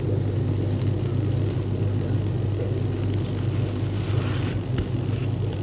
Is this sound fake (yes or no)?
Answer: no